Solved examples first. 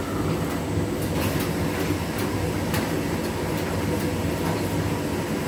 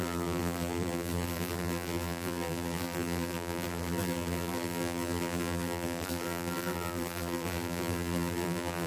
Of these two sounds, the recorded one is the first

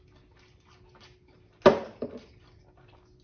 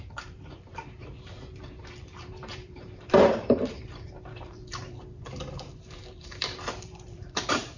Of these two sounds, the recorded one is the first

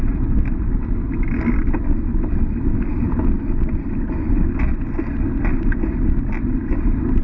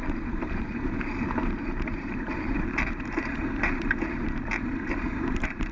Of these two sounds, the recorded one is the first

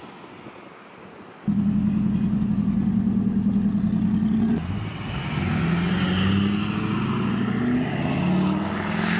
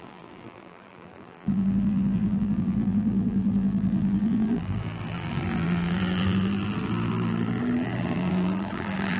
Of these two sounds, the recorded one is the first